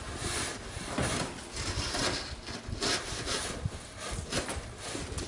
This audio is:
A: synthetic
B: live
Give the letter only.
B